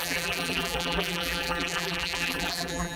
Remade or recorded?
remade